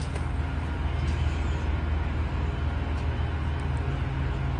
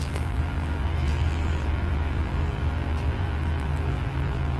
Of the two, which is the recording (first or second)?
first